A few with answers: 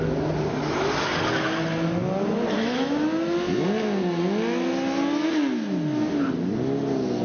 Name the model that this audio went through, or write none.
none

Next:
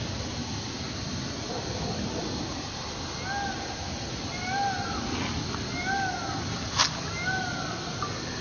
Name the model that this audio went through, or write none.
none